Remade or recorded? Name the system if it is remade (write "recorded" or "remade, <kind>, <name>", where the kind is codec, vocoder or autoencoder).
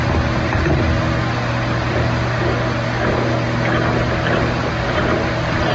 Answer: recorded